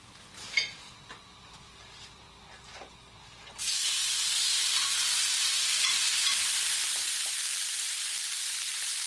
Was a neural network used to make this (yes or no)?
yes